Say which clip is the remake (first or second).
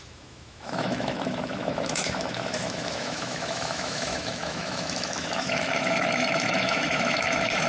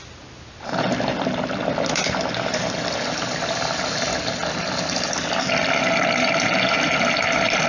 first